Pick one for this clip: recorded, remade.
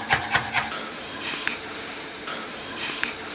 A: remade